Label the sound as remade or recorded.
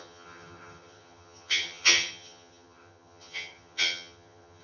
remade